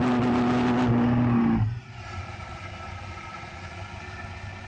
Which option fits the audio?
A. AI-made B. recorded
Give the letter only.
B